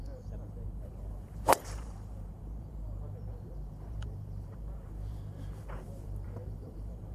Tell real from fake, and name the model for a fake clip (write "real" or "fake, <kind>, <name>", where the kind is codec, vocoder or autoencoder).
fake, vocoder, BigVGAN v2